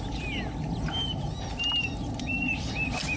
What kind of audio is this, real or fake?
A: real